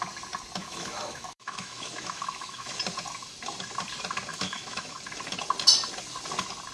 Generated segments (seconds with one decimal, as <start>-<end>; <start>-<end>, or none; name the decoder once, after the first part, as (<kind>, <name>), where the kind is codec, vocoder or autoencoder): 0.6-2.8 (autoencoder, DAC-VAE); 4.3-4.9